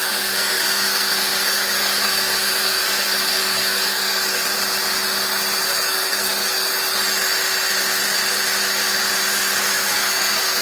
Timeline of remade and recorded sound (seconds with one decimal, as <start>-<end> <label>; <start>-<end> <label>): 0.0-4.4 remade; 4.4-5.6 recorded; 5.6-6.7 remade; 6.7-9.6 recorded; 9.6-10.6 remade